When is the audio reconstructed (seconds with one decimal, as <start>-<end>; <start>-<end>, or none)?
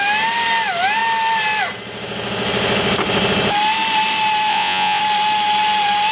4.5-5.0